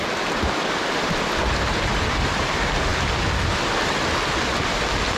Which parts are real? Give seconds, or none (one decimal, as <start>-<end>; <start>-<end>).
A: 0.0-1.9; 2.5-5.2